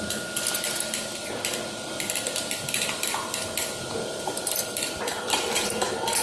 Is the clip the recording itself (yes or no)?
yes